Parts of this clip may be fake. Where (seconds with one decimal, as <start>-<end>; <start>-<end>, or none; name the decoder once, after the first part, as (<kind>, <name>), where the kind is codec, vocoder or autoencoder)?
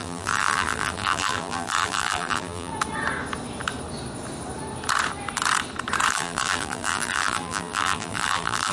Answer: 0.0-2.7 (vocoder, BigVGAN v2); 6.1-8.7